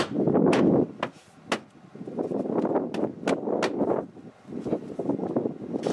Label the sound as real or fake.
real